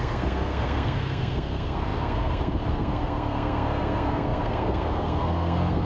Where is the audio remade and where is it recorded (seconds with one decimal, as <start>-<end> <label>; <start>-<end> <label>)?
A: 0.0-5.9 remade